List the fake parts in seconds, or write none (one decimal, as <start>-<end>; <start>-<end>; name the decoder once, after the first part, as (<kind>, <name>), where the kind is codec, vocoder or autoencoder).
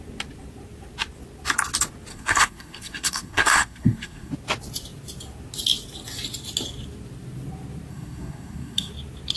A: 2.1-4.3 (codec, SNAC); 7.9-8.9